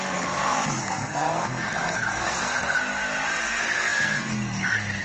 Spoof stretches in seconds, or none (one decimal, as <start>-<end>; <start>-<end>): 0.0-2.8; 3.4-5.0